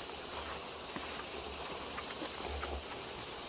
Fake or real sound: real